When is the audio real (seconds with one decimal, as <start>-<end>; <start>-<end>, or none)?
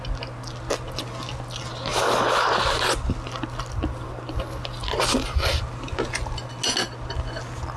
0.0-7.8